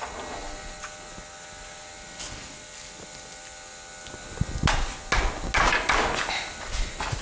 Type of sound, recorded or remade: recorded